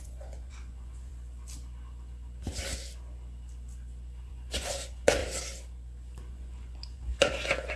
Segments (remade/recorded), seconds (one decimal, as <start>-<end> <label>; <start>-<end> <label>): 0.0-1.1 remade; 1.1-4.3 recorded; 4.3-5.2 remade; 5.2-6.3 recorded; 6.3-7.8 remade